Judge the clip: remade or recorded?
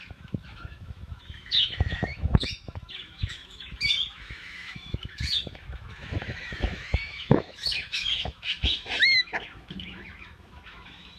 remade